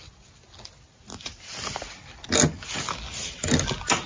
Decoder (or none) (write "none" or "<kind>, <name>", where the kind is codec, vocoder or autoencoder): none